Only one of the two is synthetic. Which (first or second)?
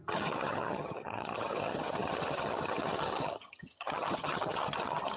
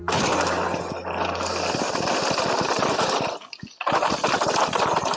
first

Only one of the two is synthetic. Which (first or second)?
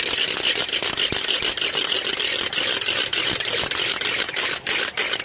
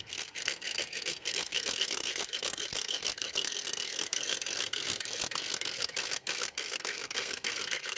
second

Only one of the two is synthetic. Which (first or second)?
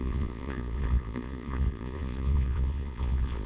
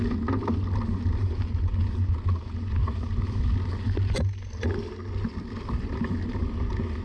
first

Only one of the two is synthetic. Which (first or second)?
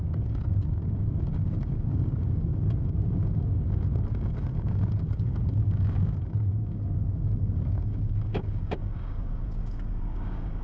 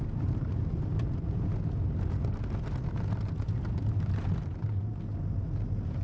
first